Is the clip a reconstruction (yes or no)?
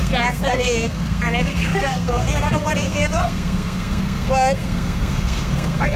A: yes